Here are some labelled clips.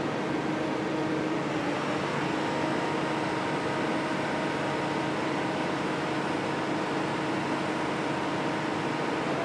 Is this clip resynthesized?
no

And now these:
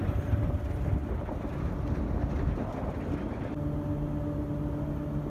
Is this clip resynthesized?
no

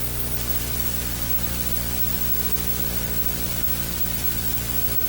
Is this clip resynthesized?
yes